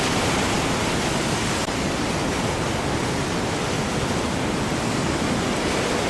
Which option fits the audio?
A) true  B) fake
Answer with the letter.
A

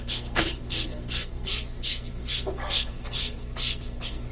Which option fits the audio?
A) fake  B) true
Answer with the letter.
A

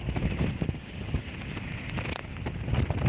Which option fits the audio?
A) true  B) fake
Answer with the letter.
A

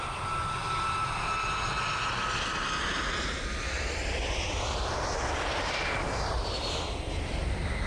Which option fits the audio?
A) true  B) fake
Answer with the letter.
A